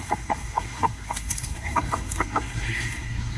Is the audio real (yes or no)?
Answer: no